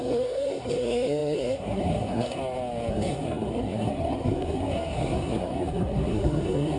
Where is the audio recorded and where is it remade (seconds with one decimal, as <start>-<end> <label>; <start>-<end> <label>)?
0.0-2.4 remade; 2.4-2.9 recorded; 2.9-6.8 remade